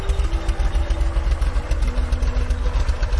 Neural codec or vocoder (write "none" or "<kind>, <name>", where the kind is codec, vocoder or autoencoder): none